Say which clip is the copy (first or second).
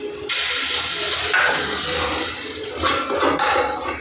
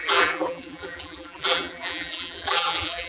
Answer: second